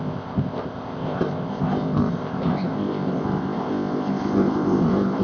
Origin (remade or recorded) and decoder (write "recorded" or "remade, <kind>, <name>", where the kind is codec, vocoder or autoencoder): remade, codec, ZipCodec